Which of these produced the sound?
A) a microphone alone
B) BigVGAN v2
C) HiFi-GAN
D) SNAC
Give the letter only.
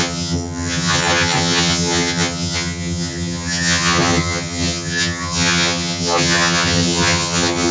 C